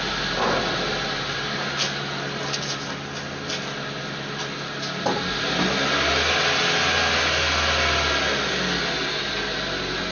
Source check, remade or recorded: recorded